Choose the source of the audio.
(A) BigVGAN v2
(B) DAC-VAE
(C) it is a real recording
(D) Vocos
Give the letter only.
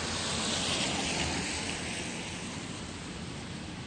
C